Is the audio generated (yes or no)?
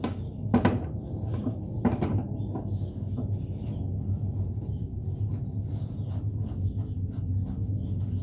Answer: no